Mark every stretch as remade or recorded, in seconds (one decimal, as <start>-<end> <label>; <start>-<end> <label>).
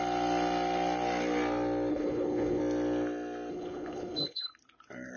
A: 0.0-1.9 recorded; 1.9-2.6 remade; 2.6-3.5 recorded; 3.5-4.5 remade; 4.5-5.2 recorded